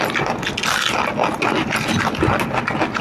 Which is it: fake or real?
real